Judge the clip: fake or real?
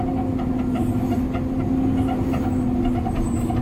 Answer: real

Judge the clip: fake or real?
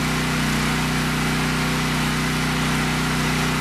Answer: real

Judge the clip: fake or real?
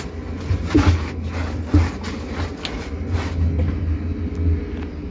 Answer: real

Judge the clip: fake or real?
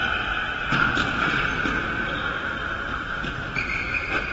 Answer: real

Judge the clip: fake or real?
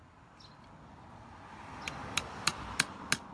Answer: real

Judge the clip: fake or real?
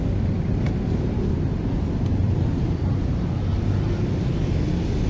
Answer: real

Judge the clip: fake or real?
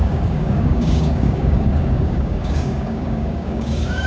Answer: fake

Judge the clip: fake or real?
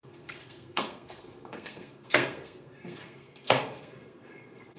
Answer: fake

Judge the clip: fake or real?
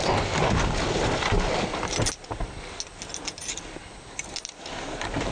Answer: real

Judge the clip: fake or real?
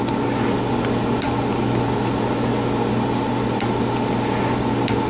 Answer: real